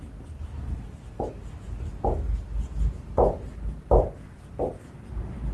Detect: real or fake real